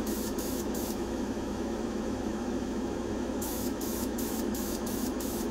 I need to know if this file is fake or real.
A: fake